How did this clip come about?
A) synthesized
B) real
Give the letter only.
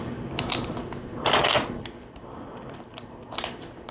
B